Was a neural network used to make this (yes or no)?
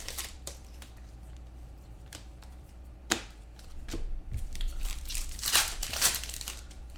yes